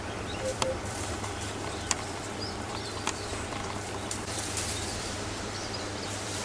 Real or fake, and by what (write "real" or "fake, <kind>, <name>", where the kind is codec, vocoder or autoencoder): fake, vocoder, BigVGAN v2